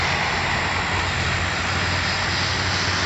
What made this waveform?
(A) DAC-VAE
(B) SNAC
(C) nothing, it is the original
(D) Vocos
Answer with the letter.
C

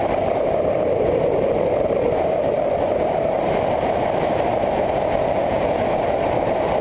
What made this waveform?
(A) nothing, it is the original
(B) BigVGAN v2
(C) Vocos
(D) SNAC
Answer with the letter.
A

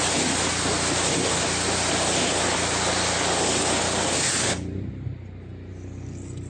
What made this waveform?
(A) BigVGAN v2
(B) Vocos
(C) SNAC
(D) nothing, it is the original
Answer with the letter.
D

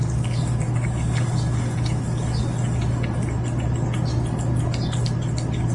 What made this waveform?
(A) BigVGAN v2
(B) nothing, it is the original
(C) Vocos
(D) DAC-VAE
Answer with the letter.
B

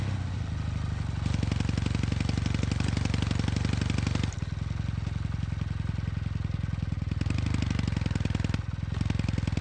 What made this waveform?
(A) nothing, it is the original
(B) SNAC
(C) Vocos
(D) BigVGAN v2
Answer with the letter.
A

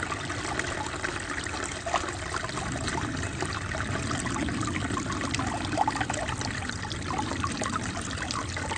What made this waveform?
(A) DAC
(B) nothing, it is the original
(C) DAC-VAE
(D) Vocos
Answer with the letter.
B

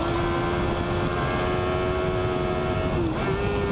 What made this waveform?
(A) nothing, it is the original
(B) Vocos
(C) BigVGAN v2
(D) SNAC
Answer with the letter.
A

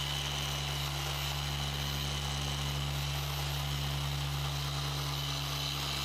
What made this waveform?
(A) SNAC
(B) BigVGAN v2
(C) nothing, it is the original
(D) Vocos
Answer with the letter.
C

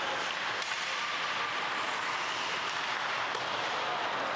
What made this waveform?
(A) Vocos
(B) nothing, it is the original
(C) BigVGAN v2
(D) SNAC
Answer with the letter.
B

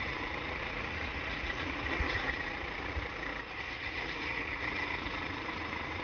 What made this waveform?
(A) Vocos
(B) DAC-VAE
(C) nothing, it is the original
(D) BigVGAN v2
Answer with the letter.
A